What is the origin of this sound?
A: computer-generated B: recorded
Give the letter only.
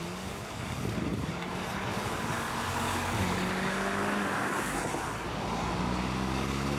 A